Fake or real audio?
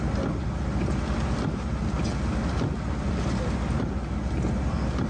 real